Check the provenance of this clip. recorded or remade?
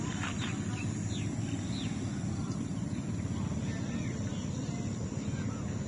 recorded